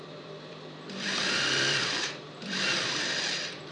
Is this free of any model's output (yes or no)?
no